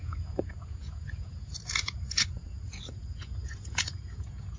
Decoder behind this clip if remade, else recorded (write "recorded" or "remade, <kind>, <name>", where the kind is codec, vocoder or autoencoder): remade, vocoder, Vocos